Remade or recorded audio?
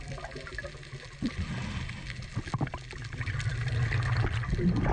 recorded